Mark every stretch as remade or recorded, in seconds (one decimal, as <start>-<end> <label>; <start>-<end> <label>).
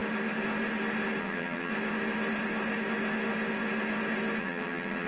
0.0-1.2 recorded; 1.2-1.7 remade; 1.7-4.4 recorded; 4.4-5.1 remade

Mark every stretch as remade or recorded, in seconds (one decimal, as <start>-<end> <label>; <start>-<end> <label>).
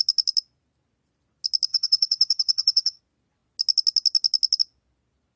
0.0-1.7 recorded; 1.7-3.0 remade; 3.0-5.4 recorded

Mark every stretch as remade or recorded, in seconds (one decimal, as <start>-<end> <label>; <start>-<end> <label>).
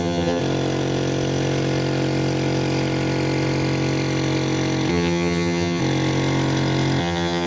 0.0-0.4 remade; 0.4-4.9 recorded; 4.9-5.8 remade; 5.8-7.0 recorded; 7.0-7.5 remade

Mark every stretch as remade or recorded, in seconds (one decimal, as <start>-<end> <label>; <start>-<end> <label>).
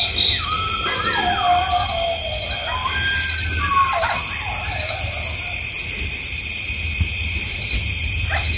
0.0-8.6 recorded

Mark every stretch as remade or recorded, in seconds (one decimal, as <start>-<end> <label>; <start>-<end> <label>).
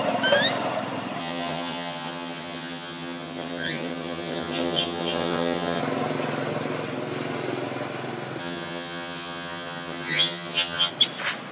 0.0-1.2 recorded; 1.2-5.8 remade; 5.8-8.4 recorded; 8.4-10.9 remade; 10.9-11.5 recorded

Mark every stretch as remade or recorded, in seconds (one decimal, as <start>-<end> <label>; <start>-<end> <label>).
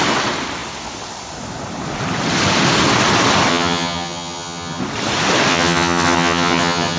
0.0-3.5 recorded; 3.5-4.8 remade; 4.8-5.5 recorded; 5.5-7.0 remade